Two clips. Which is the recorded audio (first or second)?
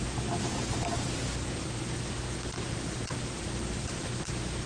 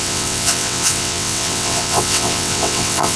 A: first